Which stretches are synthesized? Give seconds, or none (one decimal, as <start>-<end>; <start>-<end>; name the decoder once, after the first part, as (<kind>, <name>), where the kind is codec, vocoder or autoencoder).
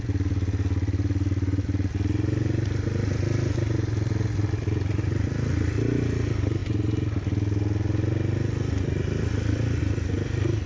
none